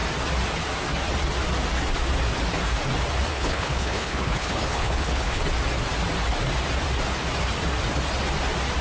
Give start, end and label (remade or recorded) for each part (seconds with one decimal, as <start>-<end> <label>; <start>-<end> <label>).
0.0-3.3 recorded; 3.3-5.4 remade; 5.4-8.8 recorded